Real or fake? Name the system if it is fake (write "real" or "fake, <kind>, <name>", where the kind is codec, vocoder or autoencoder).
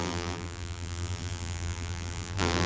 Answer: fake, vocoder, BigVGAN v2